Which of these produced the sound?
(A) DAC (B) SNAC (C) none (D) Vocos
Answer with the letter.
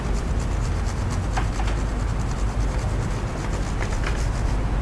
C